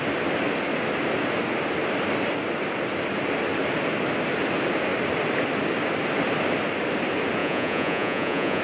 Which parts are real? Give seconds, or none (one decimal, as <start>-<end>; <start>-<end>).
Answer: 0.0-7.4